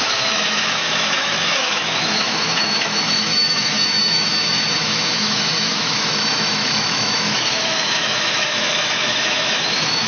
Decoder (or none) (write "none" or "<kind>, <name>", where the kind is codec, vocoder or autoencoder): autoencoder, DAC-VAE